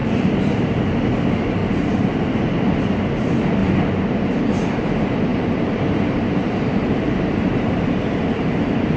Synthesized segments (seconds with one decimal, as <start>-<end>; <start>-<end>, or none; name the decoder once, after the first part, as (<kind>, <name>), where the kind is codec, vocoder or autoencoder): 0.0-0.9 (vocoder, BigVGAN v2); 1.6-2.6; 5.3-8.6